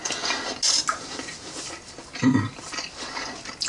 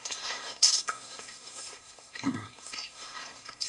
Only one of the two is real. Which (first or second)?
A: first